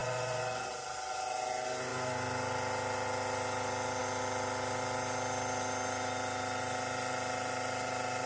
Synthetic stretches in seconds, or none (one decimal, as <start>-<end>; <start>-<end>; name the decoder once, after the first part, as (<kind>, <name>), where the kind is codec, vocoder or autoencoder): 0.0-0.7 (vocoder, Vocos)